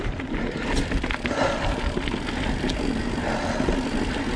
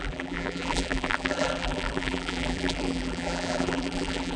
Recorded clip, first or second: first